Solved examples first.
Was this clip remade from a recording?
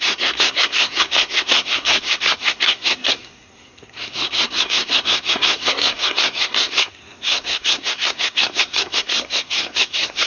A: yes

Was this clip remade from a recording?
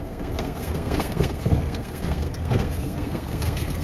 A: yes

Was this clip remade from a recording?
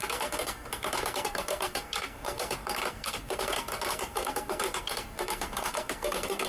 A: yes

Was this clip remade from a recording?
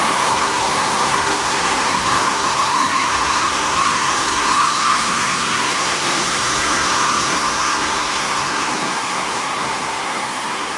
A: yes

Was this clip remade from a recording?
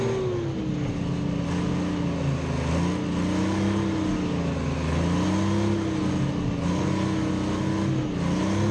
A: no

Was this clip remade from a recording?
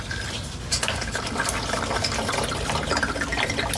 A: no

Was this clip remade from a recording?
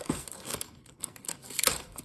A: yes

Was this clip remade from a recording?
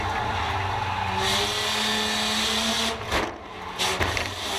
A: no